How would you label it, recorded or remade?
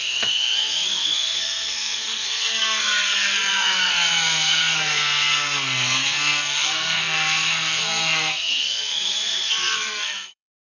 remade